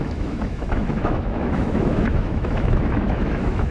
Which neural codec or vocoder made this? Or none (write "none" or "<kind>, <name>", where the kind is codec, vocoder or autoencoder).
autoencoder, DAC-VAE